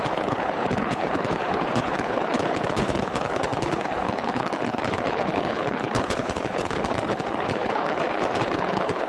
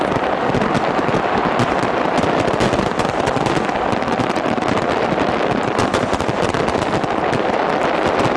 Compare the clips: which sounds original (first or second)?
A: second